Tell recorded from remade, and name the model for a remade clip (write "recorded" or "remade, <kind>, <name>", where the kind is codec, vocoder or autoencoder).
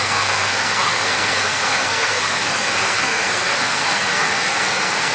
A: remade, codec, SNAC